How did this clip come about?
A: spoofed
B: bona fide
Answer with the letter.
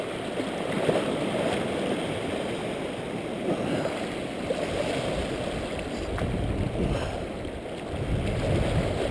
B